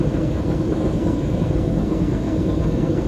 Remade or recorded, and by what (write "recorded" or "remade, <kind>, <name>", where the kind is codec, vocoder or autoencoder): remade, codec, SNAC